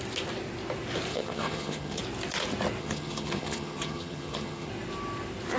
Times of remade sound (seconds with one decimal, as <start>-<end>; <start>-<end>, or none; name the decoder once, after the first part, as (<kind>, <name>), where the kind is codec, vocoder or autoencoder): 1.1-2.0 (vocoder, HiFi-GAN); 2.8-4.7